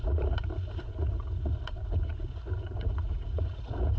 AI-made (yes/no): yes